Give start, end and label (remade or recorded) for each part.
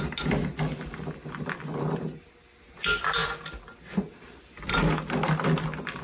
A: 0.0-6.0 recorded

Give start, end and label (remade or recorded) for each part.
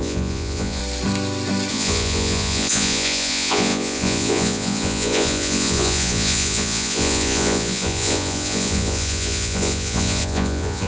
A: 0.0-0.8 remade; 0.8-1.7 recorded; 1.7-10.9 remade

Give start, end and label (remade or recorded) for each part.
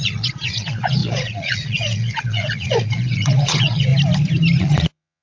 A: 0.0-3.9 remade; 3.9-4.6 recorded; 4.6-5.2 remade